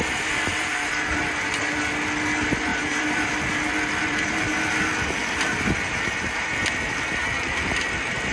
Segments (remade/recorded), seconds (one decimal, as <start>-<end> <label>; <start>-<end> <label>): 0.0-0.5 recorded; 0.5-1.3 remade; 1.3-2.7 recorded; 2.7-3.3 remade; 3.3-4.0 recorded; 4.0-4.7 remade; 4.7-5.2 recorded; 5.2-6.5 remade; 6.5-8.3 recorded